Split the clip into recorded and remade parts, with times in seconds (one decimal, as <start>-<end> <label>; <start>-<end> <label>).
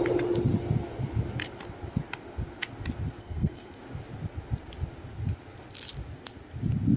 0.0-3.2 recorded; 3.2-3.8 remade; 3.8-7.0 recorded